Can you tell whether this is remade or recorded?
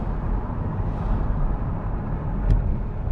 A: recorded